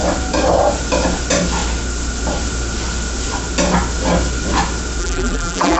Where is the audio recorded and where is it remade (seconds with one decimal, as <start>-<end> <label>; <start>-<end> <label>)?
0.0-5.0 recorded; 5.0-5.8 remade